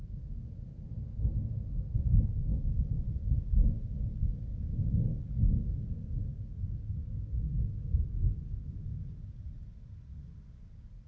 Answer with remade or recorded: recorded